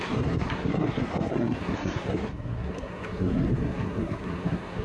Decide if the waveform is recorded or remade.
remade